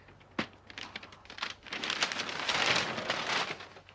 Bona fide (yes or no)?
yes